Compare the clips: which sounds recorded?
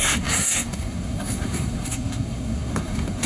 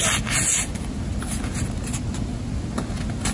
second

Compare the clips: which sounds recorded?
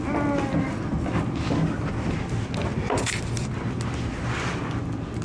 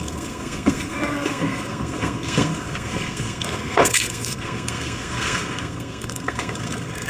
first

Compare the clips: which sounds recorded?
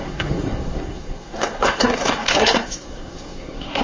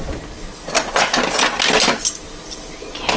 second